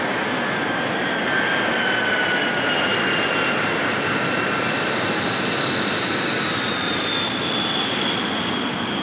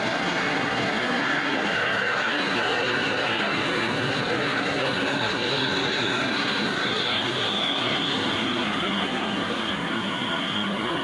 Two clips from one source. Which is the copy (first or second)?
second